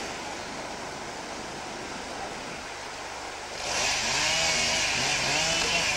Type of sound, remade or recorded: recorded